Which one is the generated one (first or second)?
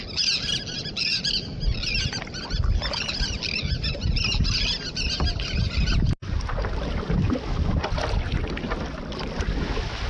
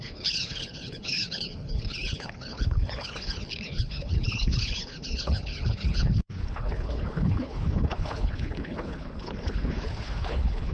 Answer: second